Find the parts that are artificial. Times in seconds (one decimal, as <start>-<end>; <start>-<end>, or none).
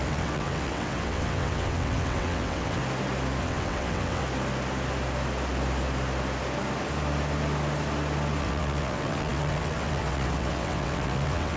0.0-2.8; 3.4-4.2; 8.4-11.6